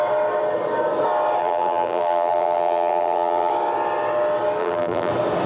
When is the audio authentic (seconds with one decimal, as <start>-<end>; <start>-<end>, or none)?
0.0-1.4; 3.5-4.6; 5.1-5.5